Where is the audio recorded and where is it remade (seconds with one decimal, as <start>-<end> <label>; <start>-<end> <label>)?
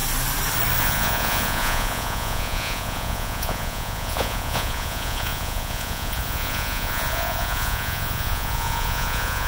0.0-0.8 recorded; 0.8-9.5 remade